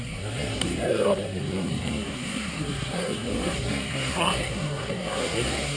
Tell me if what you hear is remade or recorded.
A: remade